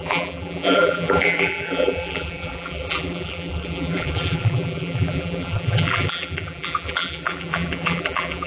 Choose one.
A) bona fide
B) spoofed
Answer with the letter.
B